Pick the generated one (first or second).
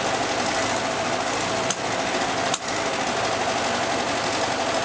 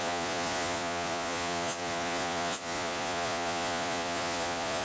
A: second